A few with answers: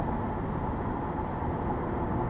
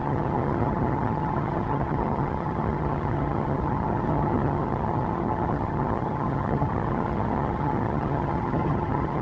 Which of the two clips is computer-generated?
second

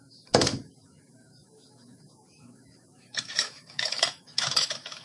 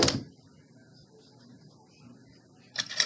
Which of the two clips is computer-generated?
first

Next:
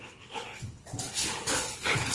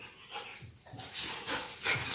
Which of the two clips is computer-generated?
first